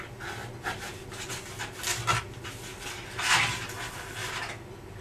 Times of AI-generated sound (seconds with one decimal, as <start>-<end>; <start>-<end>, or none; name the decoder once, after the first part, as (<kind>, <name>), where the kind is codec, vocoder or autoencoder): none